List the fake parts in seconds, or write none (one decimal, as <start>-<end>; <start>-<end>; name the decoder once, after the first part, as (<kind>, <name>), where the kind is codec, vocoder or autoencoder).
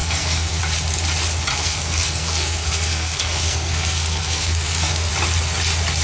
0.0-0.6 (codec, SNAC); 1.5-5.1